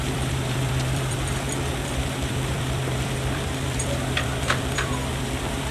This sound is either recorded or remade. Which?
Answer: remade